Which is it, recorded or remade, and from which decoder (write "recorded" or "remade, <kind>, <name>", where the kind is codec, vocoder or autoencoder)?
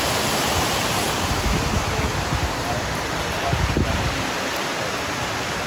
recorded